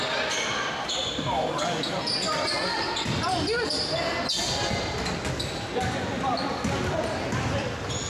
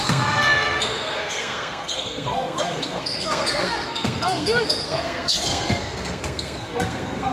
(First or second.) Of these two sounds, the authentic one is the first